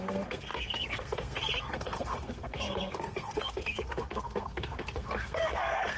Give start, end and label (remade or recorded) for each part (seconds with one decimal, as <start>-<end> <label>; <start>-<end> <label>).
0.0-6.0 remade